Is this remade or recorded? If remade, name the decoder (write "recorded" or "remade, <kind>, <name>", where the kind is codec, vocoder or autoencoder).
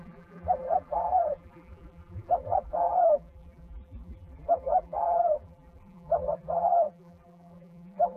remade, vocoder, BigVGAN v2